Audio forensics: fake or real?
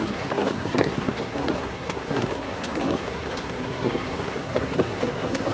fake